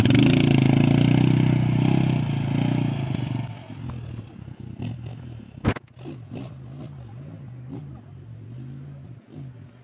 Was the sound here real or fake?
real